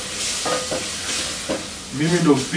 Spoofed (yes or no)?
no